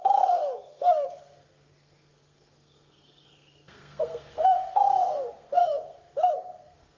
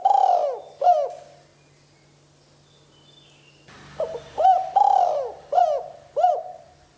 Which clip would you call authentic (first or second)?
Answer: second